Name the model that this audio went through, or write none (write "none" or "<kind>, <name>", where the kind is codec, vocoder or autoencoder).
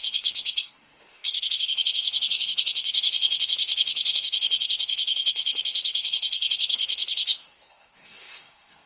codec, SNAC